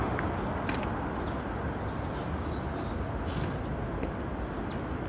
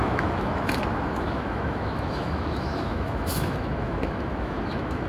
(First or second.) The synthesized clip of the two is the second